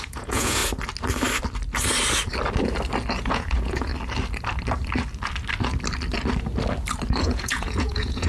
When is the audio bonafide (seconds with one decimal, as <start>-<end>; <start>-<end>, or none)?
0.6-3.2; 3.9-7.2

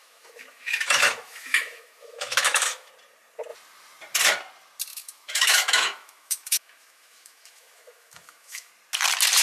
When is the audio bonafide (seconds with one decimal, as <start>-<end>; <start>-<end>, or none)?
2.9-4.9; 8.7-9.4

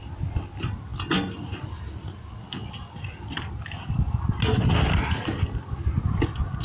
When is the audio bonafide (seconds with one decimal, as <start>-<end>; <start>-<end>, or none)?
0.0-6.6

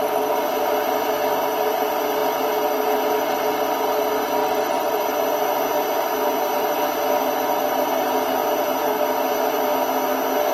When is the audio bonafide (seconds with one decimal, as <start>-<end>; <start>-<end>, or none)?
0.0-4.4; 5.0-10.5

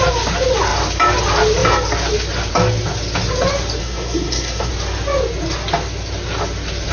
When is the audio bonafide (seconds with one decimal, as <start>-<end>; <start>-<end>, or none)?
0.0-3.8; 4.7-6.9